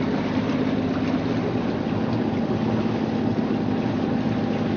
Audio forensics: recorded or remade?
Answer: recorded